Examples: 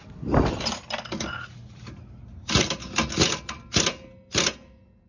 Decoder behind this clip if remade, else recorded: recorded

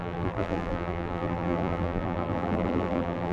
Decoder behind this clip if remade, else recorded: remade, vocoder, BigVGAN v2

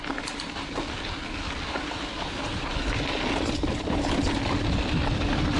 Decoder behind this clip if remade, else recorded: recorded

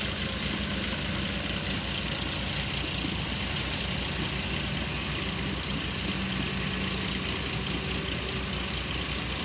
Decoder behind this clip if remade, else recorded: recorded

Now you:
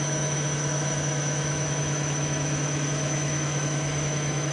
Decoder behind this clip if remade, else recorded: remade, autoencoder, DAC-VAE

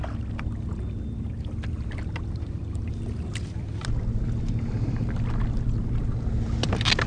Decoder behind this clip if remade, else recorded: recorded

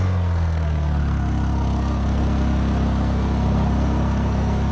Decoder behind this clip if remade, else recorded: remade, codec, SNAC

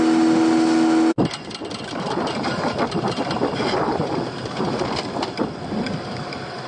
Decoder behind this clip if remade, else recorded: recorded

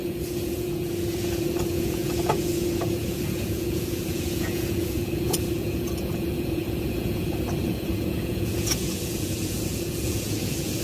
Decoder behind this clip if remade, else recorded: remade, vocoder, Vocos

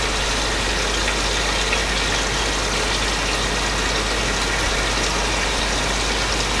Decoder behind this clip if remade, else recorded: recorded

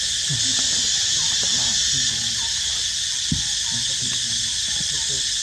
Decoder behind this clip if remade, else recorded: recorded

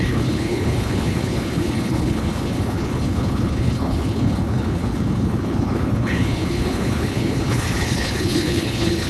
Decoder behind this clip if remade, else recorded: remade, codec, HILCodec